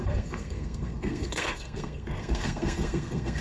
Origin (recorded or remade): remade